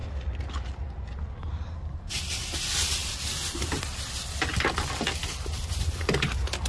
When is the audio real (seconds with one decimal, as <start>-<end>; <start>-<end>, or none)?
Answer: 0.0-6.7